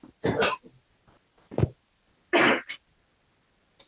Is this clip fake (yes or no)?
no